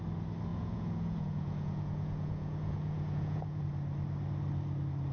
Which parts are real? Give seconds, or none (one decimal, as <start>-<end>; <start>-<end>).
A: 0.0-0.5; 3.6-5.1